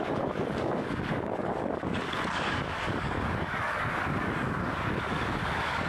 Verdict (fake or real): fake